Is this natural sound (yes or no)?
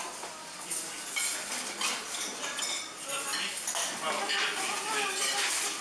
yes